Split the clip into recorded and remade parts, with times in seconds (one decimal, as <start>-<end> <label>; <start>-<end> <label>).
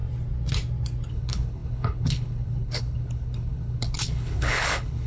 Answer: 0.0-1.1 recorded; 1.1-5.1 remade